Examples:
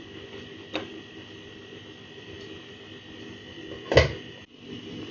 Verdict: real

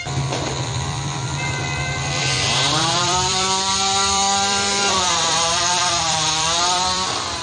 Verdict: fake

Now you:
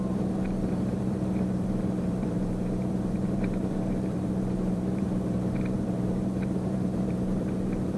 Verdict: fake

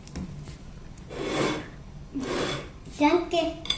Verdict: real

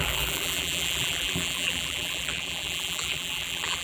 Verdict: fake